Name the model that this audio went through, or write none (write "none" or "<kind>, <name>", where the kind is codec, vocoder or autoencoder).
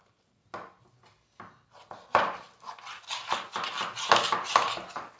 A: none